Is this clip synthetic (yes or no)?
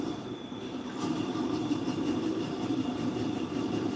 yes